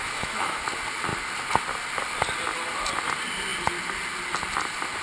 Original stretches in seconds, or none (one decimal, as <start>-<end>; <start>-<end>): 0.6-5.0